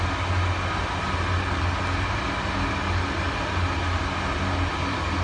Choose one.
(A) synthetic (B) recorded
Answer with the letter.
B